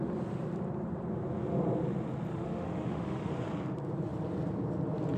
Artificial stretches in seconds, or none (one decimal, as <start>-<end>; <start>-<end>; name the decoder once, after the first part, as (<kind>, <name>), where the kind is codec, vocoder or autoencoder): 2.3-3.3 (autoencoder, DAC-VAE)